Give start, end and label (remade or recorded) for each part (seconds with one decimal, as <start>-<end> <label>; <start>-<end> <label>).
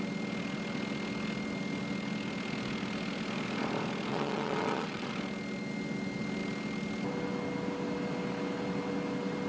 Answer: 0.0-4.1 recorded; 4.1-5.1 remade; 5.1-9.5 recorded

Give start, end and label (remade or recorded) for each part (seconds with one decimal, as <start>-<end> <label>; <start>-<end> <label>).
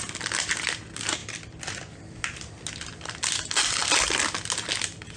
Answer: 0.0-5.2 recorded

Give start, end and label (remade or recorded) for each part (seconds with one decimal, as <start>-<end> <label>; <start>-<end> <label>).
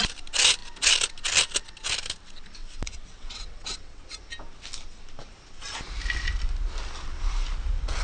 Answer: 0.0-2.6 recorded; 2.6-4.0 remade; 4.0-8.0 recorded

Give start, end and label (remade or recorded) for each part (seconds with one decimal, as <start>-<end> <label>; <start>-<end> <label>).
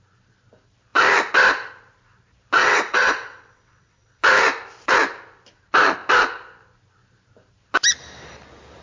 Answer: 0.0-2.6 recorded; 2.6-4.2 remade; 4.2-8.8 recorded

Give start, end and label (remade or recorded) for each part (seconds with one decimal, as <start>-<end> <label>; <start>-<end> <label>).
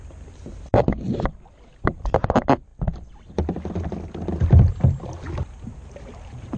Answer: 0.0-6.6 recorded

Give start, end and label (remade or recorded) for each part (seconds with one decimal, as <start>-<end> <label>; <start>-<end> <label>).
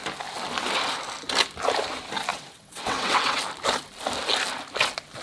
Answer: 0.0-2.3 recorded; 2.3-3.4 remade; 3.4-5.2 recorded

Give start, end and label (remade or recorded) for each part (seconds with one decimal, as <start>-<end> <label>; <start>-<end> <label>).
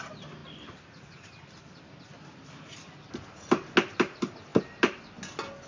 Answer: 0.0-5.7 recorded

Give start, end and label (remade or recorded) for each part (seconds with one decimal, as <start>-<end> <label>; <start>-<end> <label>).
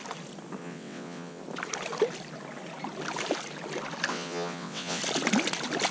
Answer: 0.0-0.6 recorded; 0.6-1.4 remade; 1.4-4.1 recorded; 4.1-5.0 remade; 5.0-5.9 recorded